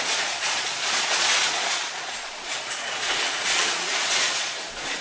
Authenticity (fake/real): fake